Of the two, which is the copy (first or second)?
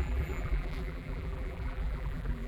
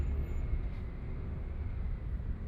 first